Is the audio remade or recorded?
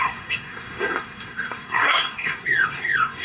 remade